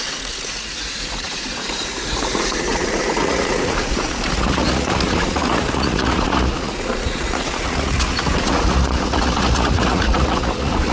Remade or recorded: remade